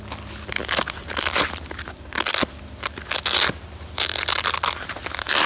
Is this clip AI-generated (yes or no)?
no